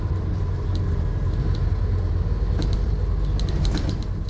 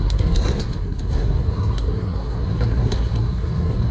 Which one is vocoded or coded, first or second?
second